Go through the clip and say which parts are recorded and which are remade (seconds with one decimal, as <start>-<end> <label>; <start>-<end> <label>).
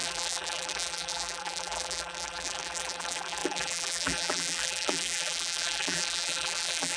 0.0-7.0 remade